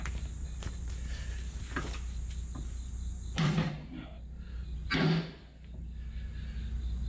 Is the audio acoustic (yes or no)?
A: yes